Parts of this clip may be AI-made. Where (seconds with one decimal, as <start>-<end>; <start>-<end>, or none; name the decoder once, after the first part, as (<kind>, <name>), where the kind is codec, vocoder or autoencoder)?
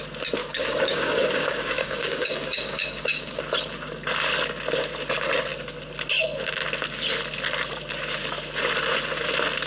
0.4-3.4 (codec, DAC)